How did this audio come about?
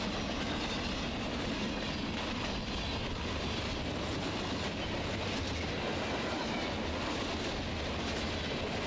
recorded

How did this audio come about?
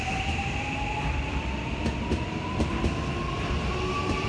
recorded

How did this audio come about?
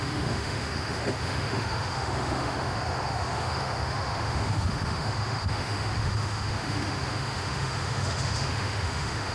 remade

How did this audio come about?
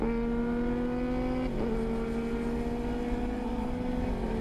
recorded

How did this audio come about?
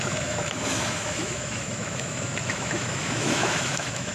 remade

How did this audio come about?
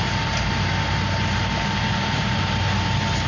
recorded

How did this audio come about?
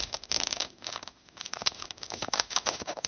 remade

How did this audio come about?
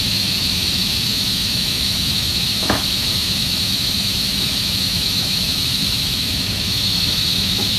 remade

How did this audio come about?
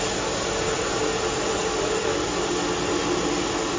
recorded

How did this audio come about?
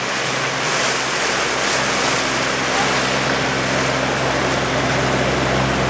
recorded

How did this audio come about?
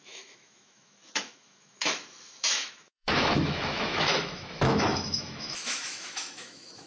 remade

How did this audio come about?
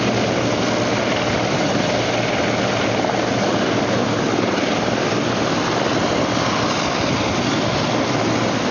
recorded